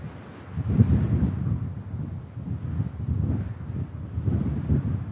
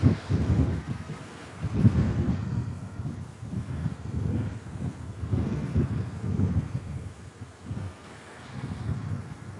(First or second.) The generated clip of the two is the second